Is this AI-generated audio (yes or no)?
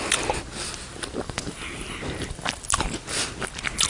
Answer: no